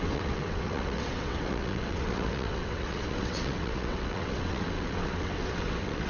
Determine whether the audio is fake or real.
fake